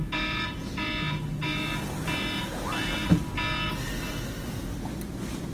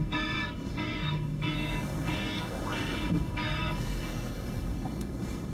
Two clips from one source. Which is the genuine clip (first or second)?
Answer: first